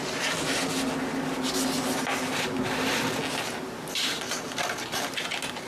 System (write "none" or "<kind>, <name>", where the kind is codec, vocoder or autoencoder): none